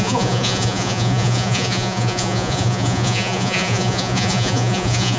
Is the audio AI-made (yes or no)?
yes